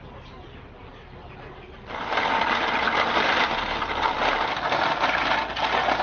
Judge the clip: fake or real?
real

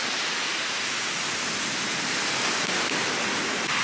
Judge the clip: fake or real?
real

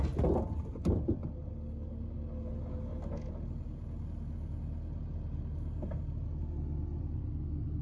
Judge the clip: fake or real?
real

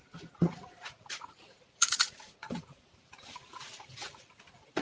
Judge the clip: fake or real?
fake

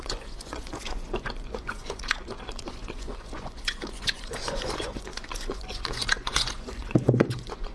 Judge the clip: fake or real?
fake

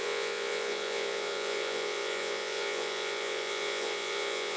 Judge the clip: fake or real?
fake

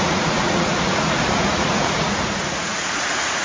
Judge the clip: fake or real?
fake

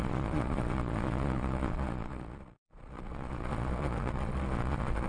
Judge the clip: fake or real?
fake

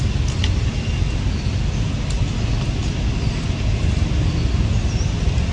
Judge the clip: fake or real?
real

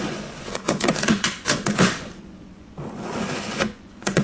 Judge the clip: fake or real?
fake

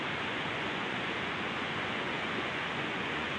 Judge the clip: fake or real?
fake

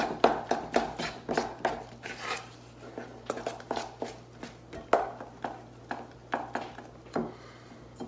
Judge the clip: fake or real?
real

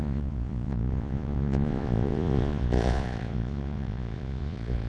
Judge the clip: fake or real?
fake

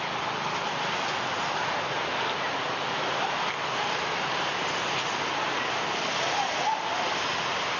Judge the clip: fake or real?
real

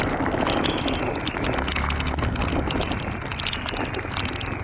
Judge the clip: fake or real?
real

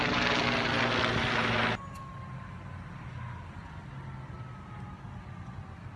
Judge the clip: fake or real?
real